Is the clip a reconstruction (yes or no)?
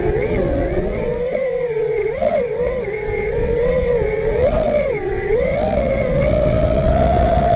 yes